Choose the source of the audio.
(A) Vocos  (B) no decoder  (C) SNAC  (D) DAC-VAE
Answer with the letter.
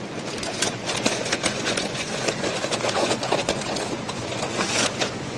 A